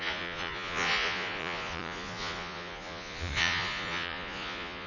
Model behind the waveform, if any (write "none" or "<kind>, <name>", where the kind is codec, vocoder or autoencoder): vocoder, Vocos